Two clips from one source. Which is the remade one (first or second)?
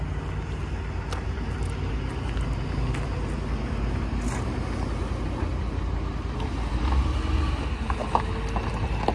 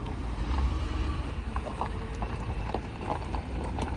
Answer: second